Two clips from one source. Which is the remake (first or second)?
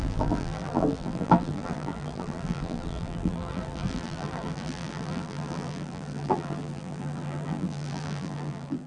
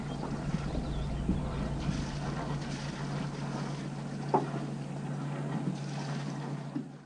first